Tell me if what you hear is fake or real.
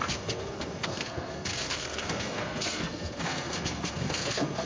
fake